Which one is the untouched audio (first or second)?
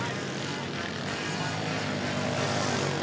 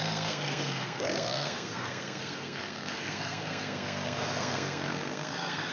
first